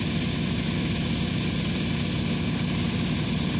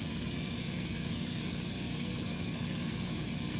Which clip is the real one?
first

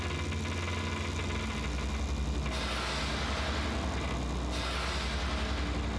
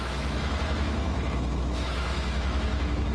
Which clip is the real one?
first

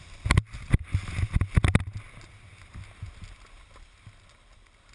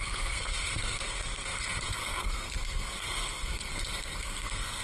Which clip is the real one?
first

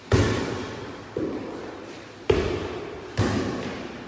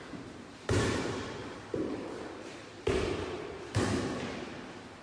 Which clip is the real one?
first